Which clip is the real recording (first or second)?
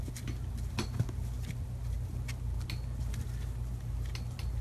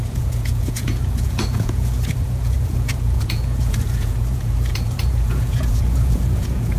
first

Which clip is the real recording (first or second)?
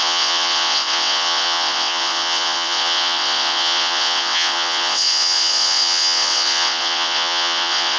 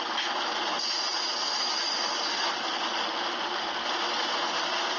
second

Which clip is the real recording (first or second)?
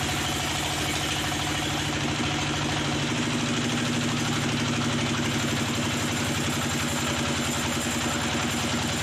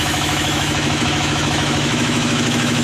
first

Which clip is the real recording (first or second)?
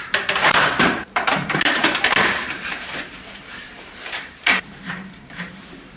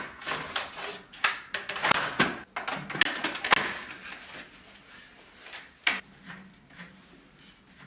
second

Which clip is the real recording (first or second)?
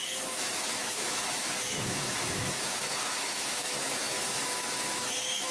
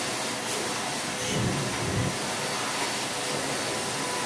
second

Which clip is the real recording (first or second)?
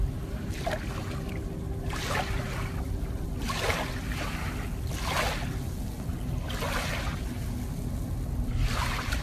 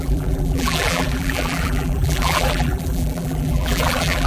first